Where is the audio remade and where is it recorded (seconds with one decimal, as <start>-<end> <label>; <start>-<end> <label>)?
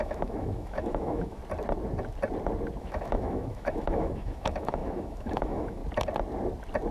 0.0-1.4 remade; 1.4-2.8 recorded; 2.8-5.8 remade; 5.8-6.9 recorded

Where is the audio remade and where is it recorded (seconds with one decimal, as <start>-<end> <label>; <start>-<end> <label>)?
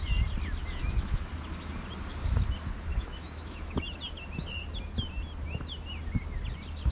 0.0-0.8 recorded; 0.8-1.3 remade; 1.3-2.9 recorded; 2.9-4.0 remade; 4.0-6.9 recorded